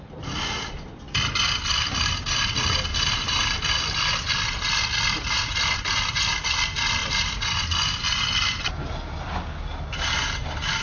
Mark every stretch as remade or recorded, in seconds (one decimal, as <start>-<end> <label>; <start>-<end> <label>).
0.0-2.9 recorded; 2.9-3.7 remade; 3.7-10.8 recorded